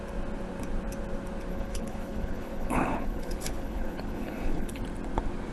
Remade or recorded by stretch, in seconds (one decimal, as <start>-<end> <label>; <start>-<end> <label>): 0.0-1.5 recorded; 1.5-4.8 remade; 4.8-5.5 recorded